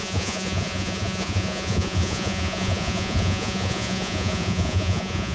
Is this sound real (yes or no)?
no